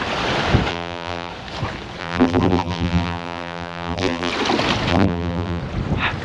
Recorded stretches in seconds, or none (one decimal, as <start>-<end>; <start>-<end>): 0.0-0.7; 1.3-2.0; 4.3-4.9; 5.6-6.2

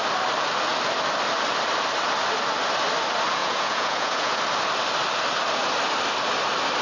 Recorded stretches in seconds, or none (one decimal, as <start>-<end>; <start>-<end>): 0.0-3.4; 4.4-6.8